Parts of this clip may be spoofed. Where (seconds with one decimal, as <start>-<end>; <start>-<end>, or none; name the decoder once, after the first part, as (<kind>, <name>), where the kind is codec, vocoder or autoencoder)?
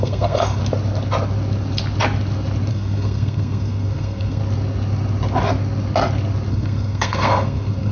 0.0-0.6 (codec, SNAC); 2.7-4.4; 6.5-7.9